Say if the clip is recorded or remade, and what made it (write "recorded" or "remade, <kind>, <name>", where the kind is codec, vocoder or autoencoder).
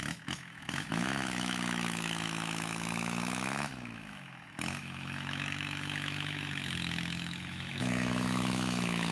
remade, autoencoder, DAC-VAE